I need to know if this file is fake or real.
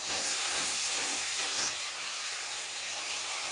fake